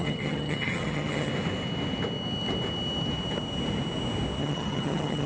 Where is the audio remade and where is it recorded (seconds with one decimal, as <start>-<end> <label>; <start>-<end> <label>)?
0.0-1.3 remade; 1.3-4.4 recorded; 4.4-5.3 remade